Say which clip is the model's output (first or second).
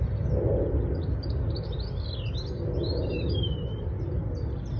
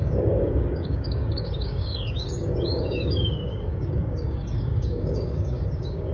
second